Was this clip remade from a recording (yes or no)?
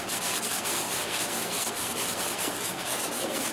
yes